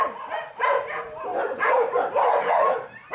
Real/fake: real